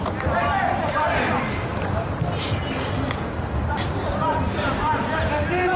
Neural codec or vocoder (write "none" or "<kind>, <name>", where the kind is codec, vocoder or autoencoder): none